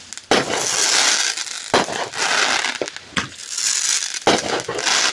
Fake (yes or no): no